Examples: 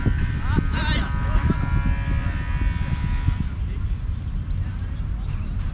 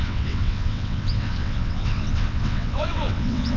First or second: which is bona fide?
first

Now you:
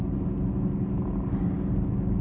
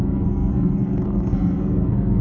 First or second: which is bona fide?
first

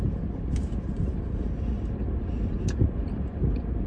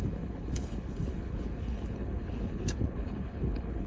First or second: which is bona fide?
first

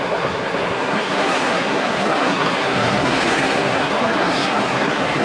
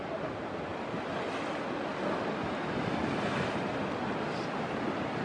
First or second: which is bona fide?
second